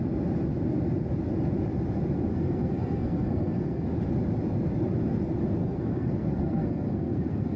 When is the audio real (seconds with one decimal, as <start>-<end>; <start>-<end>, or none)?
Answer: 0.0-2.3; 3.9-5.6